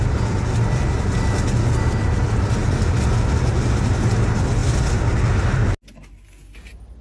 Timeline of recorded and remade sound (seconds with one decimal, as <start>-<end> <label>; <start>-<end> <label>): 0.0-7.0 recorded